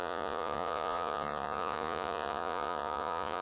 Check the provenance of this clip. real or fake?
fake